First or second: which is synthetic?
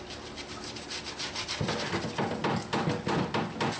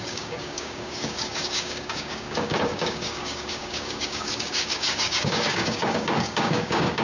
second